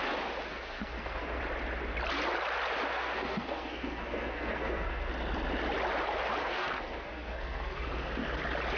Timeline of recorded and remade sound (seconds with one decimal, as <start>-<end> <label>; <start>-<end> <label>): 0.0-0.5 recorded; 0.5-1.4 remade; 1.4-2.9 recorded; 2.9-5.1 remade; 5.1-6.4 recorded; 6.4-7.8 remade; 7.8-8.8 recorded